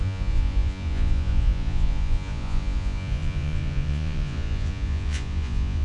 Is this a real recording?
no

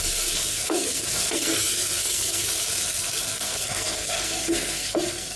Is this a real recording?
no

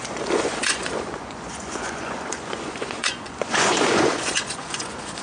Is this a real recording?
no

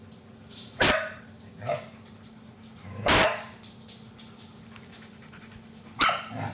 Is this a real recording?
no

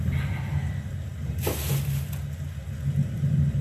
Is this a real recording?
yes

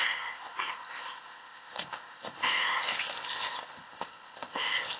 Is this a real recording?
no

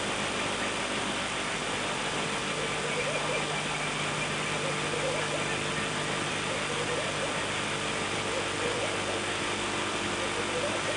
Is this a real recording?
yes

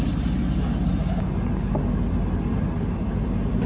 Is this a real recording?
yes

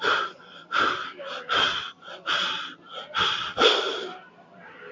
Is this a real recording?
no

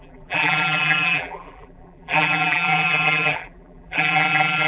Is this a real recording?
no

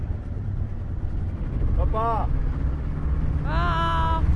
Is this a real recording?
yes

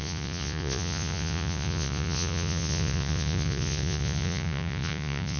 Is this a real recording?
no